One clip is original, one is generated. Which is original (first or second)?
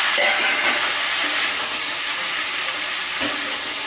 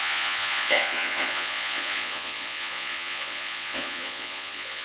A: first